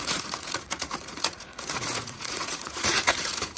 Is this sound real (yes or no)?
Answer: no